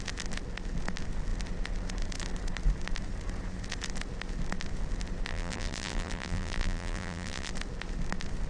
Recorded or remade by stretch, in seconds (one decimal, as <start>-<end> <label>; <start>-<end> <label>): 0.0-5.3 recorded; 5.3-7.5 remade; 7.5-8.5 recorded